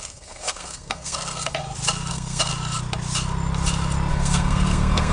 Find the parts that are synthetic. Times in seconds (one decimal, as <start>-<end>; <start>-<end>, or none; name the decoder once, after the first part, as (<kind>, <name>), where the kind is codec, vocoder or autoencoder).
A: 0.0-1.6 (codec, SNAC); 2.1-2.5; 4.1-5.1